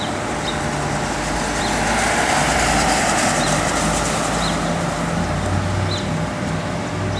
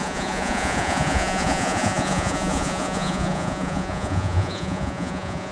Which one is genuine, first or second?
first